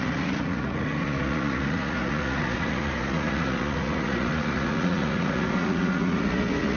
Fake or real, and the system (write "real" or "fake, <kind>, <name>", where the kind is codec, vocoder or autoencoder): fake, vocoder, Vocos